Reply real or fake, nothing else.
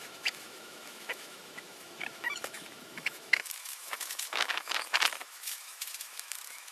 fake